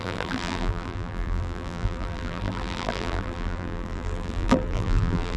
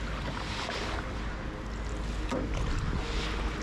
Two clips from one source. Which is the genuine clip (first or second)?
second